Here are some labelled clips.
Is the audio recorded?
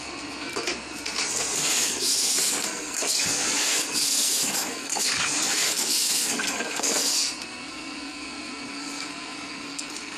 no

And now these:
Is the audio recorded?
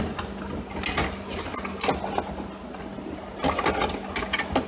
yes